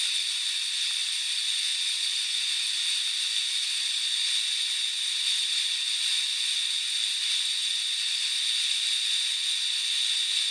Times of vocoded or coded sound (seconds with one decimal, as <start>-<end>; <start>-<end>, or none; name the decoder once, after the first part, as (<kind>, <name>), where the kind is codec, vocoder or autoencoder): none